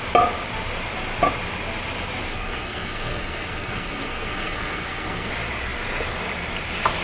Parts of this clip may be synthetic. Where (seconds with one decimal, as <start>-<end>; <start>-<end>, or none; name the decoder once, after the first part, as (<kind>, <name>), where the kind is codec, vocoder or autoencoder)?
2.3-5.3 (codec, SNAC)